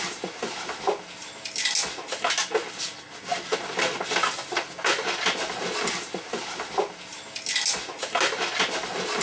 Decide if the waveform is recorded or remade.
recorded